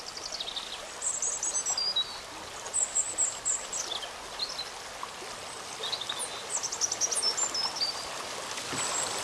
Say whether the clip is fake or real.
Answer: real